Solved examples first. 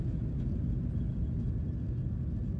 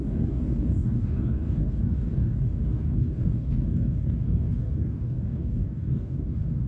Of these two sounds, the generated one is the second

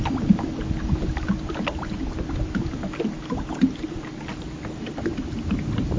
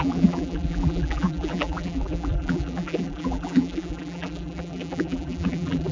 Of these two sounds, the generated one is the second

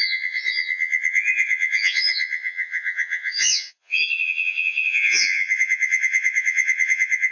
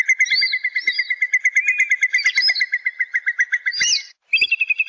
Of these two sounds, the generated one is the first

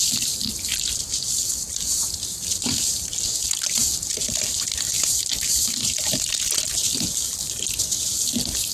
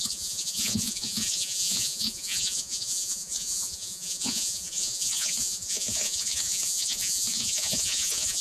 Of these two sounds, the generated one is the second